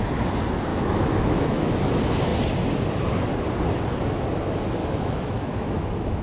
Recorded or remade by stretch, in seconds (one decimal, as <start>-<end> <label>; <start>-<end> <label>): 0.0-0.7 recorded; 0.7-1.8 remade; 1.8-4.8 recorded; 4.8-6.2 remade